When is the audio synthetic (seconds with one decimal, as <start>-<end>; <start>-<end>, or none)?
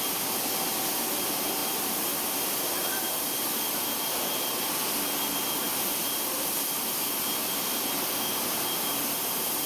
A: 0.0-9.7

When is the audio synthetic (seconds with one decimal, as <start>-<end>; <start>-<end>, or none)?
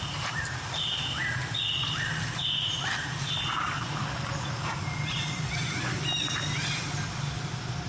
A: none